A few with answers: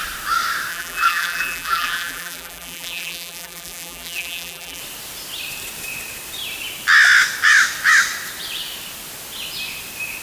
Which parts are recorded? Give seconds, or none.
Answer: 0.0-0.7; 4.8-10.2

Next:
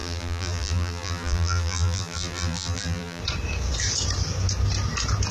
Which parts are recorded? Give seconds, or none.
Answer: 3.2-5.3

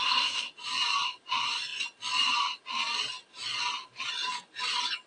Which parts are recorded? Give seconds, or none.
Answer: 0.5-5.1

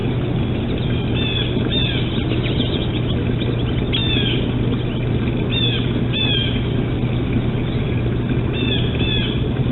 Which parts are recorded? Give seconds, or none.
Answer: 0.0-9.7

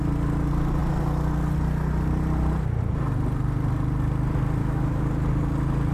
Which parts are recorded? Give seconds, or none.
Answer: 0.0-4.6; 5.1-5.9

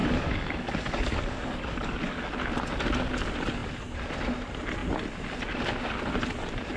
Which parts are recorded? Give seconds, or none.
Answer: 2.3-6.8

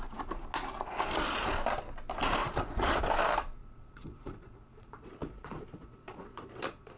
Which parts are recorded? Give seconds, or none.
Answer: 0.0-2.4; 3.0-3.6

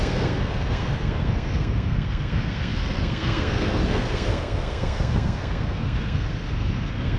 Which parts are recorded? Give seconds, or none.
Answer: none